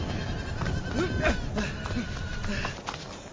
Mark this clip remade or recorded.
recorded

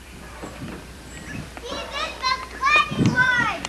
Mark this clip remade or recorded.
remade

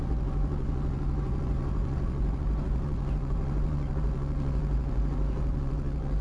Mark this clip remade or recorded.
remade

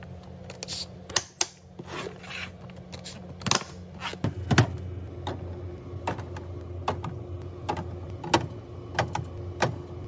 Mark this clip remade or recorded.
recorded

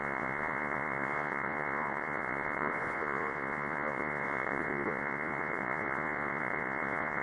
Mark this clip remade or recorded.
remade